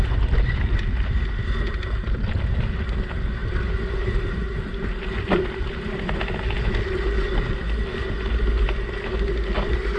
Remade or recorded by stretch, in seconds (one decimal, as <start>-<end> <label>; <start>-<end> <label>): 0.0-10.0 recorded